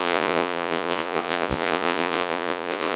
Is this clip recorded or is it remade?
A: remade